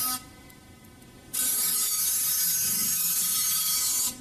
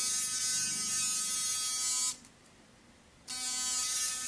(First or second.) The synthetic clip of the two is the first